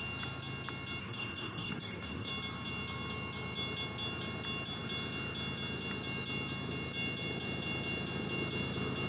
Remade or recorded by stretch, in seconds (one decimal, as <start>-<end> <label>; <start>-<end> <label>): 0.0-1.0 recorded; 1.0-2.3 remade; 2.3-9.1 recorded